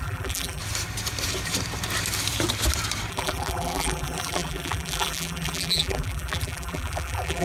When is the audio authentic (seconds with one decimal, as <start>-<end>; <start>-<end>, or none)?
0.6-3.1